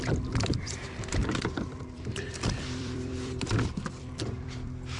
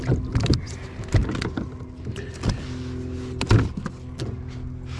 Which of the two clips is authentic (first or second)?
second